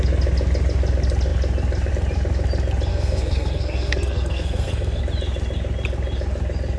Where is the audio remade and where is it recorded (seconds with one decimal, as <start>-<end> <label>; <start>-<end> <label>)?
0.0-2.9 recorded; 2.9-5.0 remade; 5.0-6.8 recorded